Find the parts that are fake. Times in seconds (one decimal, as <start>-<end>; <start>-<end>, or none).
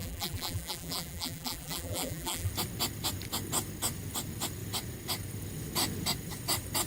0.0-2.5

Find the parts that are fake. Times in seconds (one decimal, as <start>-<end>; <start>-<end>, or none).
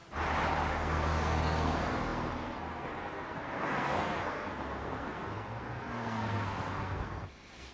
0.7-7.7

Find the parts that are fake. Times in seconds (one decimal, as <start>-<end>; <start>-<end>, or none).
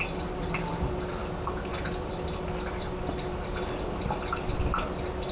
none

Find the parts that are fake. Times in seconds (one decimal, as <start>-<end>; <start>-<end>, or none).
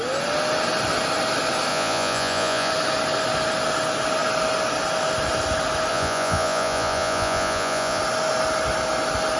1.7-2.7; 5.9-8.0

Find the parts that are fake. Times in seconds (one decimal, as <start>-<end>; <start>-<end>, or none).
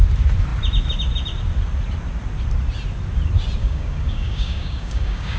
3.6-5.4